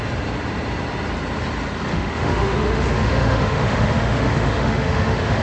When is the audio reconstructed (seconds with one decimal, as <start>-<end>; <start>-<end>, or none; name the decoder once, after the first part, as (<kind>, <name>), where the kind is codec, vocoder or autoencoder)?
1.9-5.4 (autoencoder, DAC-VAE)